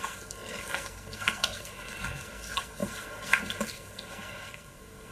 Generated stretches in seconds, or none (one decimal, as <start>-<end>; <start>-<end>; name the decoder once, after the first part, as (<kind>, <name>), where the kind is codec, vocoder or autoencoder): 0.0-5.1 (codec, SNAC)